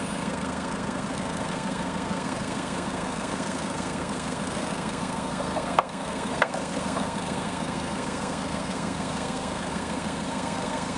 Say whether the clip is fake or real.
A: fake